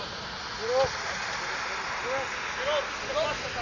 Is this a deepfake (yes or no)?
no